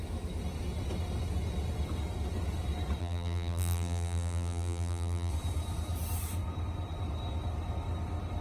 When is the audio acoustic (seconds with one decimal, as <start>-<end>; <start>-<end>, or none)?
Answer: 0.0-3.0; 5.3-8.4